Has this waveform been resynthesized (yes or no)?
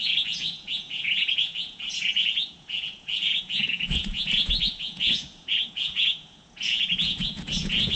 yes